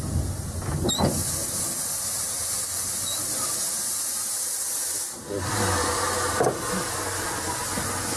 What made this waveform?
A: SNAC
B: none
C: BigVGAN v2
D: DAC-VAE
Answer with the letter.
B